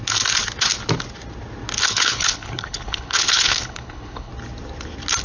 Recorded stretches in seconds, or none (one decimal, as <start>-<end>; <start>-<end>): 0.0-1.8; 4.3-5.2